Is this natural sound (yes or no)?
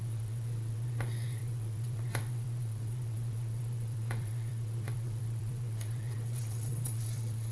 no